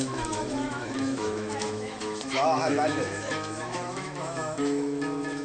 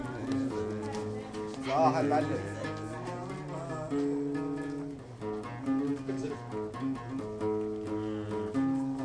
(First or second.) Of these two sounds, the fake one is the first